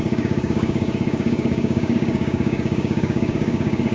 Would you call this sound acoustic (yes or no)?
no